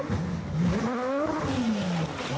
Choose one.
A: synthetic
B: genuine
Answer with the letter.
B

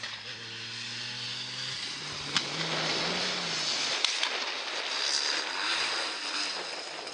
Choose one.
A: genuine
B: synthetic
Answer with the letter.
A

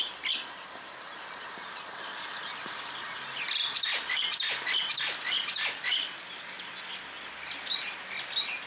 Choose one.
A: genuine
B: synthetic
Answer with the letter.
A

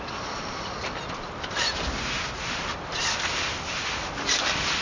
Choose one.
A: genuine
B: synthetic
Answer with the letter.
A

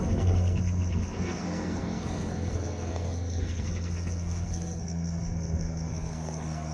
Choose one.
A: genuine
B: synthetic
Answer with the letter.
B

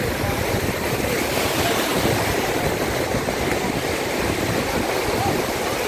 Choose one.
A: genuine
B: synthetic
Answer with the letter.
A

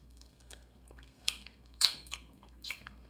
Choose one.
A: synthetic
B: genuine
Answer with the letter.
A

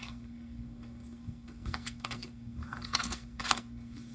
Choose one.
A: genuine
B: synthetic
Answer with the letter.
B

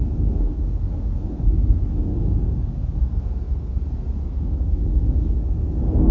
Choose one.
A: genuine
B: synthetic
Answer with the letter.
B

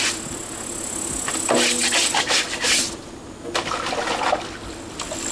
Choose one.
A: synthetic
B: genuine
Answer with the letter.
B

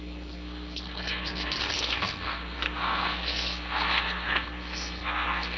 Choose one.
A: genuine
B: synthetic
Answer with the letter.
B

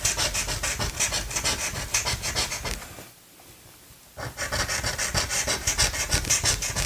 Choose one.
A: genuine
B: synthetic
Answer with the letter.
A